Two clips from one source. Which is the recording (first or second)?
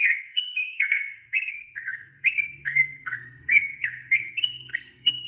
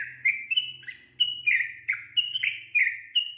second